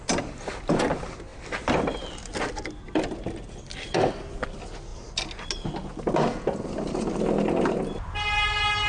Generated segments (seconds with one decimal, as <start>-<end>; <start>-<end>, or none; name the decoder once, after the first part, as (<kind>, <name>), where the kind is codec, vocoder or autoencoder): none